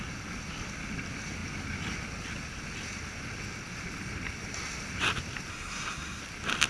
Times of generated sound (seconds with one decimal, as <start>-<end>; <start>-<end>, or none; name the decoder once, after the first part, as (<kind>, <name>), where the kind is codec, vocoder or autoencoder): 5.5-6.2 (codec, SNAC)